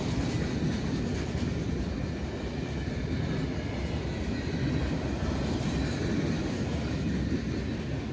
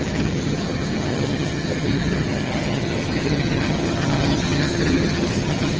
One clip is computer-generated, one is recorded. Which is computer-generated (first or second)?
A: second